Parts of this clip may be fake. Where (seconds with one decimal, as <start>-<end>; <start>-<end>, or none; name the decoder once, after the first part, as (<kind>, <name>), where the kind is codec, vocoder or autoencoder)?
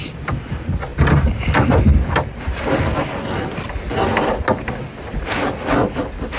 none